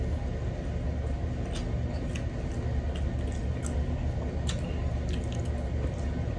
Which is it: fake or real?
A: real